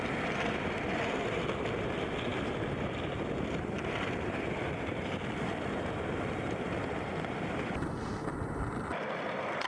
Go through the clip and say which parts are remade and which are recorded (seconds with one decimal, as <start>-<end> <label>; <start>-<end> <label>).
0.0-9.7 remade